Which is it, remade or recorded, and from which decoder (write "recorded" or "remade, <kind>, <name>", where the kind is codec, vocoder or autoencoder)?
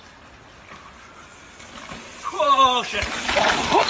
recorded